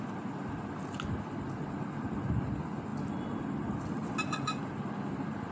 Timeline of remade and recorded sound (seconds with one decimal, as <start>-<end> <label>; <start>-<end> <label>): 0.0-5.5 recorded